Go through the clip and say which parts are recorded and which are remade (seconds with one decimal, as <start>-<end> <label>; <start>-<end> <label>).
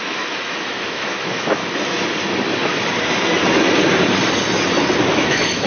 0.0-1.6 remade; 1.6-5.0 recorded; 5.0-5.7 remade